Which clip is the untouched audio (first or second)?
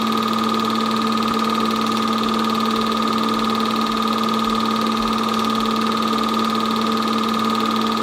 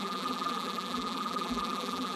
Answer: first